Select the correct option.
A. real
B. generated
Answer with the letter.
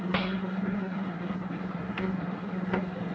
B